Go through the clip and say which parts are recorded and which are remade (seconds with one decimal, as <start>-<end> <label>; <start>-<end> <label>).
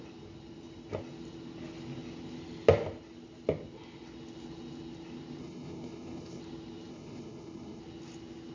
0.0-5.4 recorded; 5.4-6.4 remade; 6.4-6.9 recorded; 6.9-7.8 remade; 7.8-8.5 recorded